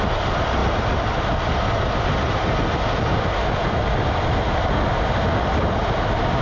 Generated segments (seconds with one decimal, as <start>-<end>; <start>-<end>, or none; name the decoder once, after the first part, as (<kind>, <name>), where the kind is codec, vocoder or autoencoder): none